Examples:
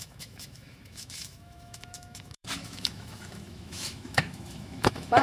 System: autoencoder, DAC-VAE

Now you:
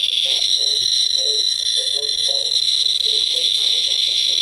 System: autoencoder, DAC-VAE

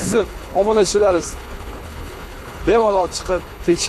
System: codec, HILCodec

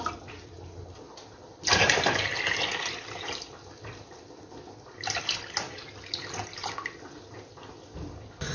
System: none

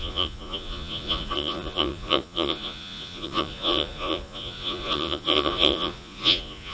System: vocoder, Vocos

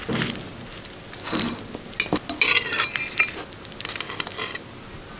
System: none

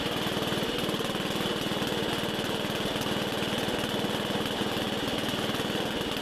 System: none